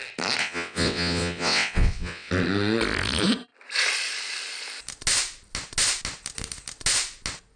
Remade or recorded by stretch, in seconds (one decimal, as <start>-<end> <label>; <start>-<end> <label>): 0.0-0.4 recorded; 0.4-2.3 remade; 2.3-7.6 recorded